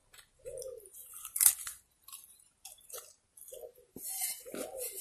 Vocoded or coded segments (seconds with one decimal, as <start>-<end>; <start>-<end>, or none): 0.0-0.6